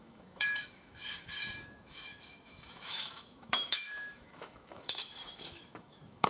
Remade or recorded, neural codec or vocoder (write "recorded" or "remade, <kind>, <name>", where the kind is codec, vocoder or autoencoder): remade, autoencoder, DAC-VAE